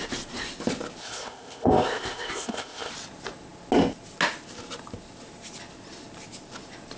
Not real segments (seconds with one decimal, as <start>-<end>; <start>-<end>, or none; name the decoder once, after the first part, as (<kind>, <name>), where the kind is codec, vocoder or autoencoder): 1.0-2.9 (codec, ZipCodec)